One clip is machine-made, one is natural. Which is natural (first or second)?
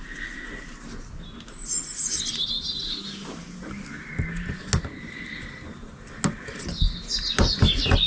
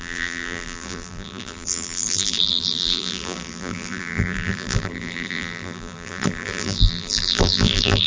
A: first